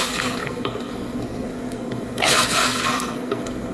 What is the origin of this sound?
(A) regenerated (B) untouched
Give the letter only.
A